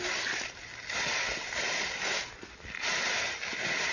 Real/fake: real